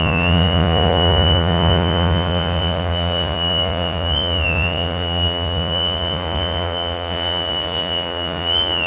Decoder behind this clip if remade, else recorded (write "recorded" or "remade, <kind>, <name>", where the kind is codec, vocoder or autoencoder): remade, vocoder, Vocos